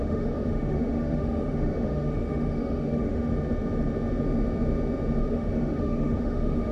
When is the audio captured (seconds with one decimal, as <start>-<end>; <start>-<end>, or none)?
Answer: 3.3-5.2

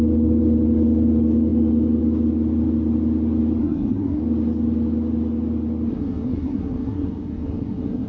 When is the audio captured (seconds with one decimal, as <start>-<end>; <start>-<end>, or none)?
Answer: 0.0-3.6; 4.2-5.9

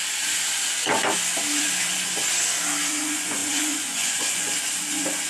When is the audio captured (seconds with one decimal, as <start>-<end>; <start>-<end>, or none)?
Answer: 0.0-1.6; 2.2-2.9

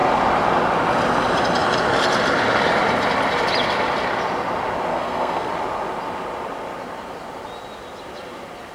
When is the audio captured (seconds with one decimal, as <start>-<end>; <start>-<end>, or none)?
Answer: 0.0-4.9; 5.5-8.7

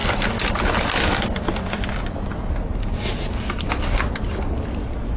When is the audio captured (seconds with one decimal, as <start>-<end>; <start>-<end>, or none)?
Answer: 0.0-5.2

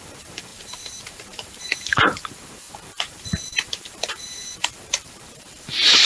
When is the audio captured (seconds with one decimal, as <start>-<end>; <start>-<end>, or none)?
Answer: none

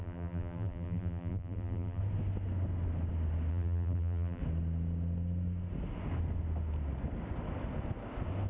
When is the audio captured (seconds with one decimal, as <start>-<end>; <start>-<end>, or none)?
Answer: 2.0-3.5; 4.4-8.5

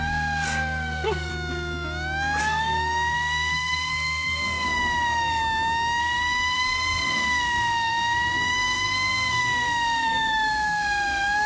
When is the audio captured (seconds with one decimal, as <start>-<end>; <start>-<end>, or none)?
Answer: 1.3-2.4; 5.4-6.0